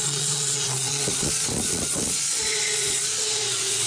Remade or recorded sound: remade